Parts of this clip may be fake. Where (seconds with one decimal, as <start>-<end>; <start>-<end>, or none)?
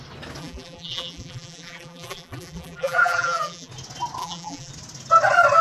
0.4-3.7; 4.2-4.7